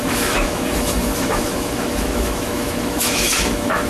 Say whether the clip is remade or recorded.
remade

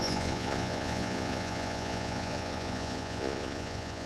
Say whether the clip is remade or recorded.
remade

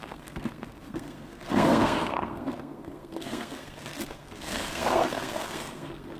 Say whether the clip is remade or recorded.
remade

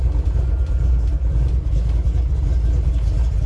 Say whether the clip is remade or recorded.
recorded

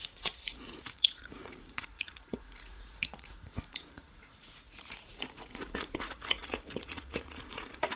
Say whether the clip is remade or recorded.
remade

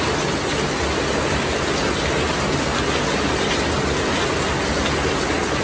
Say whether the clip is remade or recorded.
recorded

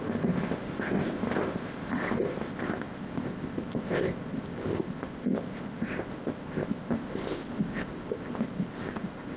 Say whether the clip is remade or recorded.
remade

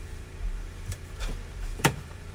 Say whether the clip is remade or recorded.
remade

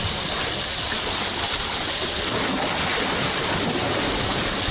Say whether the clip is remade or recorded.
recorded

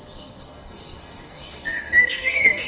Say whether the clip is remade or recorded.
remade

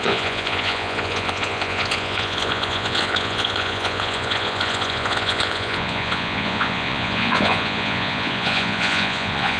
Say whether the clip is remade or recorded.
remade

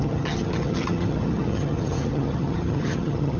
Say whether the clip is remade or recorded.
remade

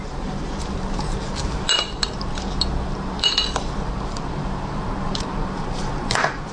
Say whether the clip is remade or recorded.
remade